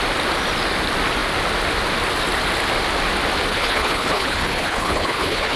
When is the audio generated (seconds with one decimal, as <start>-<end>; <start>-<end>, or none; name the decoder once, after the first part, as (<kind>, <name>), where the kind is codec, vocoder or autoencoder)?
3.5-5.6 (codec, HILCodec)

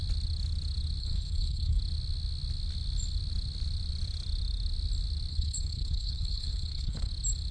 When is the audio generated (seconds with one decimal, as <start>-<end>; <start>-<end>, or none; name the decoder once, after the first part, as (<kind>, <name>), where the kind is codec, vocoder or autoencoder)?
1.0-1.8 (codec, HILCodec); 5.3-7.1

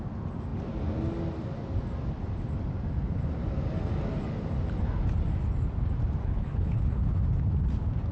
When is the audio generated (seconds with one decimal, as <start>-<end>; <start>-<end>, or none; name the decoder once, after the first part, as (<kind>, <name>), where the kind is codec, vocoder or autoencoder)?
6.2-7.2 (codec, HILCodec)

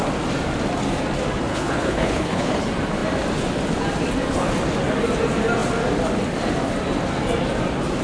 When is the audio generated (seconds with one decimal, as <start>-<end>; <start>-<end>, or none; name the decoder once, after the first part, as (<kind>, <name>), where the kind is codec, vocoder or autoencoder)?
1.5-2.6 (codec, HILCodec)

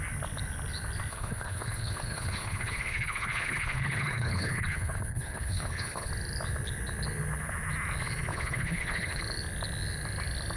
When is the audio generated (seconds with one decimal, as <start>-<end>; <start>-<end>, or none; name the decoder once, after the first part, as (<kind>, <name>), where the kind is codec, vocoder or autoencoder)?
1.1-6.1 (codec, HILCodec); 8.3-9.2

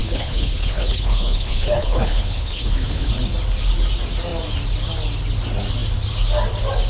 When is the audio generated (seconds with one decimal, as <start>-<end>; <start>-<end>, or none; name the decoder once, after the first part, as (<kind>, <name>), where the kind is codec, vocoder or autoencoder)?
0.0-3.1 (codec, HILCodec)

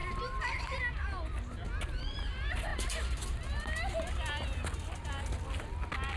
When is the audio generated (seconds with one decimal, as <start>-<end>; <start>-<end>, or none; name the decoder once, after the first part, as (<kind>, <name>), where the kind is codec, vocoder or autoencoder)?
none